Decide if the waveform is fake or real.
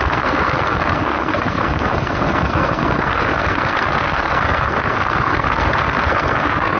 fake